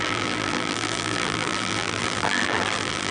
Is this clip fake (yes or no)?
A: yes